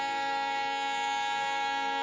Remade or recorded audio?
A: remade